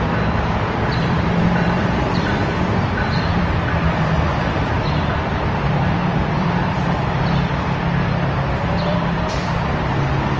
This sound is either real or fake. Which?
fake